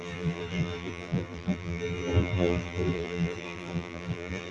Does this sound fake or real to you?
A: fake